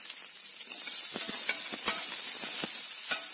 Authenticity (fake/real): real